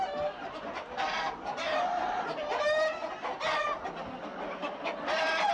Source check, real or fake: real